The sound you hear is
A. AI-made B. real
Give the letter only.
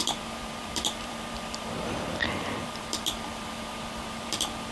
A